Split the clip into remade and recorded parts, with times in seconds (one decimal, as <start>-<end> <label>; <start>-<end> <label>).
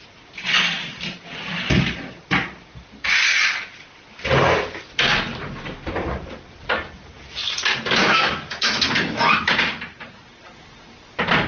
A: 0.0-8.0 recorded; 8.0-9.5 remade; 9.5-11.5 recorded